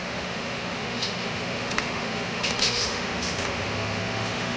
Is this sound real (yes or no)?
no